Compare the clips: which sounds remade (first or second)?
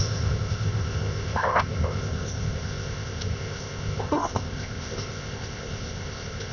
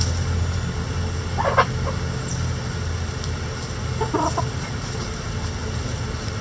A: first